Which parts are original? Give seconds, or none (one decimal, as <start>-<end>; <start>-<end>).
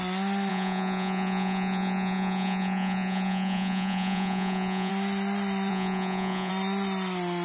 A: 0.0-0.5; 4.9-5.7; 6.5-7.4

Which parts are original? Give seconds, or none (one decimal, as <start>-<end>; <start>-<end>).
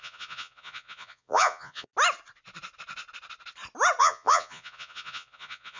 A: 1.9-4.0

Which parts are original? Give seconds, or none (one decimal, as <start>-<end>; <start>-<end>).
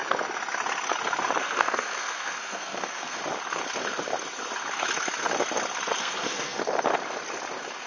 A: 0.0-1.4; 3.2-6.0; 6.6-7.9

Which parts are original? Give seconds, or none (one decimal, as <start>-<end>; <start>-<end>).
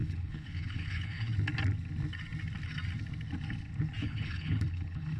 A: 1.3-4.0